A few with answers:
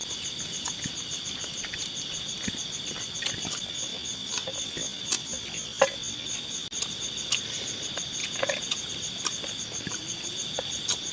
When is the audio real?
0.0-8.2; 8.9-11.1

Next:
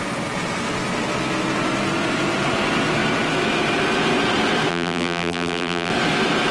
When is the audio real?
0.0-4.7; 5.9-6.5

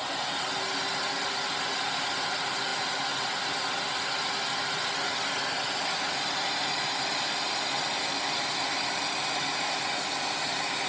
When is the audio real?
0.0-10.9